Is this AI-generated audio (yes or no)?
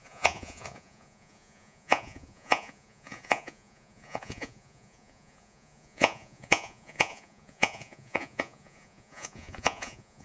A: yes